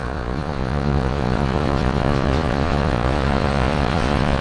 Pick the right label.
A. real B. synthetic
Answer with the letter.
B